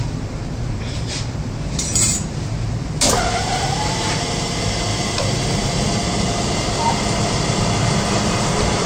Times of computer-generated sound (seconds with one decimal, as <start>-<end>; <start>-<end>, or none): 0.0-8.9